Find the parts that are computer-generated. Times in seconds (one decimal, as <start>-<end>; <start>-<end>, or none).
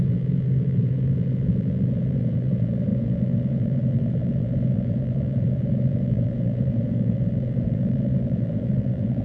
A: 0.0-9.2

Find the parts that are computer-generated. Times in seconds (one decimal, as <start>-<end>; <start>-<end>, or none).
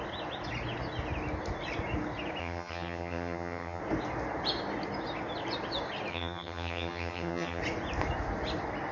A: 2.4-3.8; 6.1-7.6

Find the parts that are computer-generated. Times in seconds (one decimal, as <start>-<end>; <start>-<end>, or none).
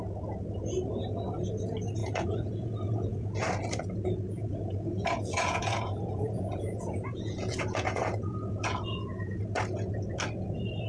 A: 2.0-3.5; 4.3-9.4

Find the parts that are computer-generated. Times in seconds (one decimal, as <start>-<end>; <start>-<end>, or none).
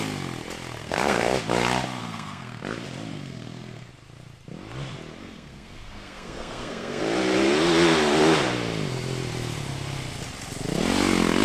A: 0.8-1.4; 2.0-2.6; 3.1-3.9; 5.2-7.0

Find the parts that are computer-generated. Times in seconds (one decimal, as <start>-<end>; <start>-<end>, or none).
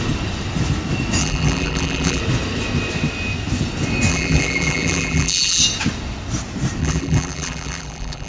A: 1.2-2.2; 4.1-5.6; 6.8-8.3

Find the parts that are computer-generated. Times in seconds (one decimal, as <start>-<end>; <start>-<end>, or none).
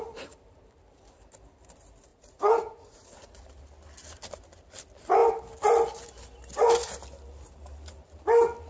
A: 2.1-3.4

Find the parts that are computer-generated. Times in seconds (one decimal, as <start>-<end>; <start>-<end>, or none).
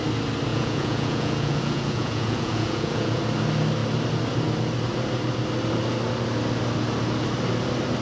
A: 0.5-3.2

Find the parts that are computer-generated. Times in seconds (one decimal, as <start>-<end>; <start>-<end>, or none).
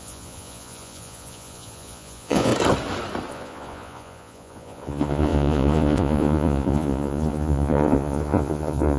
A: 0.0-2.5; 3.3-9.0